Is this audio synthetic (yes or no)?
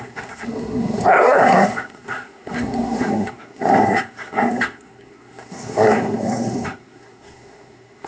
yes